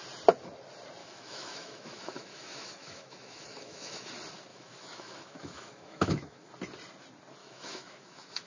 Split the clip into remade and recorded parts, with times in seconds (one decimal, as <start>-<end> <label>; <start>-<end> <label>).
0.0-1.0 recorded; 1.0-4.1 remade; 4.1-4.5 recorded; 4.5-6.5 remade; 6.5-7.4 recorded; 7.4-8.5 remade